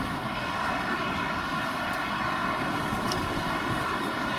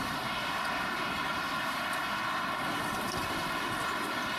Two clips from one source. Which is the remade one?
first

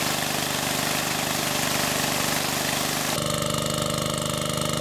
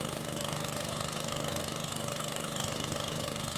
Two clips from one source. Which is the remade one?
second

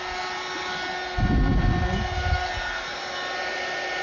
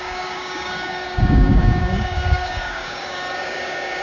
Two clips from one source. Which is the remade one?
second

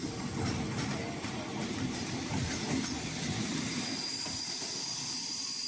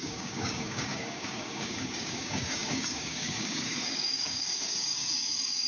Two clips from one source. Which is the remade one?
second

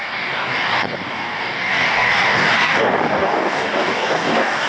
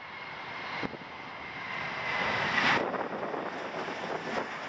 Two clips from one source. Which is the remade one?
first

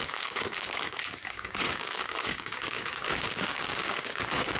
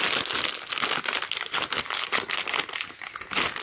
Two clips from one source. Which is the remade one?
first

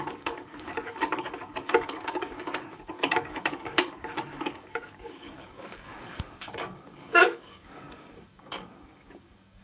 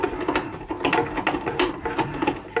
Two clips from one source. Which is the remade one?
first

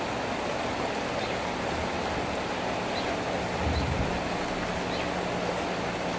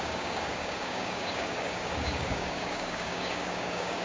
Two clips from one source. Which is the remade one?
second